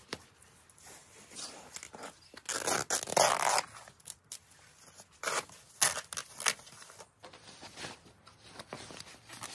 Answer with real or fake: real